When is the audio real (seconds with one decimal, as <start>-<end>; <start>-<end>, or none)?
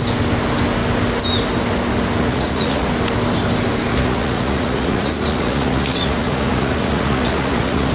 0.0-2.2; 2.9-3.9